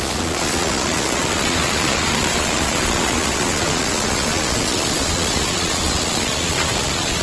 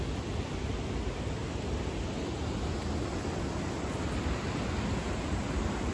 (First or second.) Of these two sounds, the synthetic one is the first